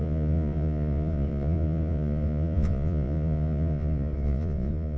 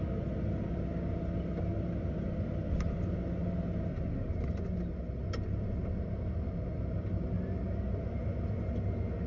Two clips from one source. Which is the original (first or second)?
second